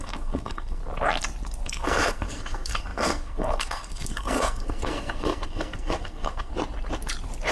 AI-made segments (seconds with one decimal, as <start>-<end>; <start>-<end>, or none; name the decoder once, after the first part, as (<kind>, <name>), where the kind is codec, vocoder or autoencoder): 0.0-0.8 (codec, SNAC); 1.7-6.5